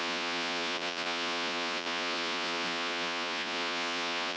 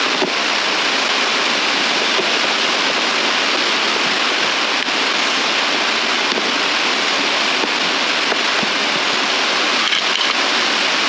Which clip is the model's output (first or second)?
first